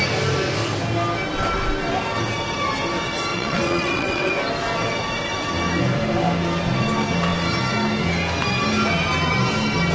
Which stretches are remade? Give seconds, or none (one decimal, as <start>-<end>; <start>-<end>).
3.3-4.3